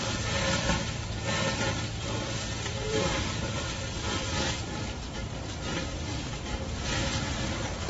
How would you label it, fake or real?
fake